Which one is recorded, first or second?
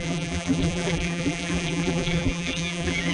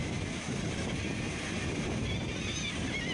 second